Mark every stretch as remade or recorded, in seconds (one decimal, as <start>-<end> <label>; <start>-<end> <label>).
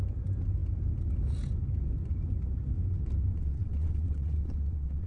0.0-3.3 recorded; 3.3-5.1 remade